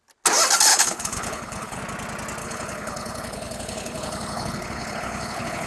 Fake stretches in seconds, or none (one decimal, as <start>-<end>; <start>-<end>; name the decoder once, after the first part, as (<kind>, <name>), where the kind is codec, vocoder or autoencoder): 0.7-1.8 (codec, HILCodec); 2.4-5.7